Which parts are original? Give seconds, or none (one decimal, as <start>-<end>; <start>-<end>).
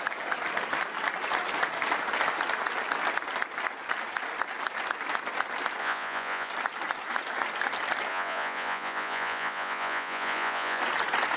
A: 0.0-5.8; 6.5-8.1; 10.8-11.4